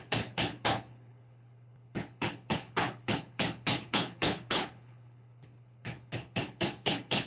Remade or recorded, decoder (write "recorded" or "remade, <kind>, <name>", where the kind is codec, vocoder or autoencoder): remade, codec, HILCodec